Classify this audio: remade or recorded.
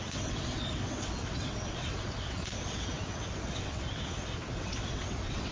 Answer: remade